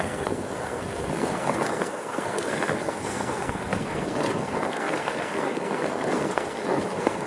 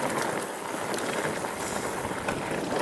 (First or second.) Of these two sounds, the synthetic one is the first